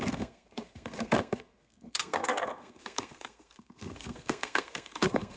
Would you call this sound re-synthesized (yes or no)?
yes